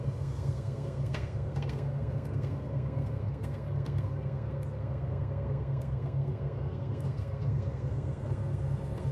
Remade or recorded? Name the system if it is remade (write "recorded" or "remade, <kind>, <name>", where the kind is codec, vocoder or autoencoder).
remade, codec, SNAC